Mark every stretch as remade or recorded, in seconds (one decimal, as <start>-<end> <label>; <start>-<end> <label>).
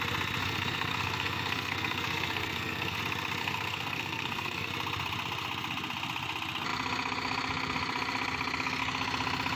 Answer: 0.0-0.4 recorded; 0.4-3.0 remade; 3.0-3.4 recorded; 3.4-4.7 remade; 4.7-9.6 recorded